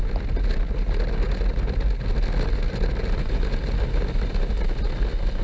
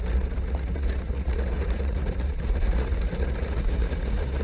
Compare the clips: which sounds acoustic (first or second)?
first